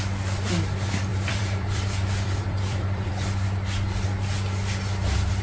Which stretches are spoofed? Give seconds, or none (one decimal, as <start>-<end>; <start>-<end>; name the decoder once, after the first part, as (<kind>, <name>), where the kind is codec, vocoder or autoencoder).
1.1-3.1 (vocoder, BigVGAN v2)